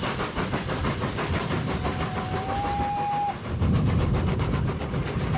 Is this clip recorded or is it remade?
recorded